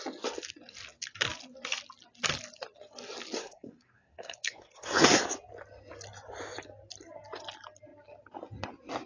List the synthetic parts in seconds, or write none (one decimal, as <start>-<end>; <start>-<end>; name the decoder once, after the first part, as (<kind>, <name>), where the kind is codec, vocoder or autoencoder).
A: 3.4-5.2 (codec, SNAC)